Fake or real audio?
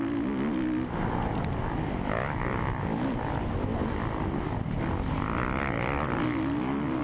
real